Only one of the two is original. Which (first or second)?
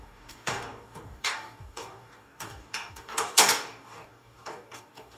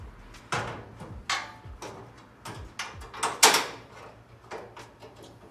second